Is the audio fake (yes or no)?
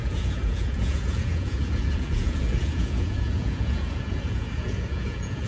yes